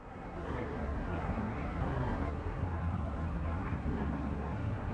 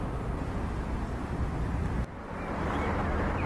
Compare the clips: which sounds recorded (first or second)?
second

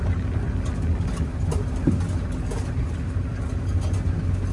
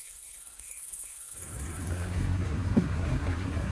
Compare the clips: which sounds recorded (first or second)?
first